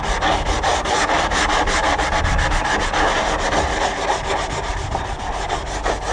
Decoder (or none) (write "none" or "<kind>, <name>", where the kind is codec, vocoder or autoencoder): none